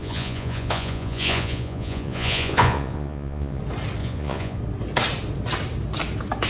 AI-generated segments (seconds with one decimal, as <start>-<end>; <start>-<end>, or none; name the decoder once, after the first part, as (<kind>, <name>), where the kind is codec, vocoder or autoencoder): 0.0-3.6 (vocoder, Vocos); 4.0-4.6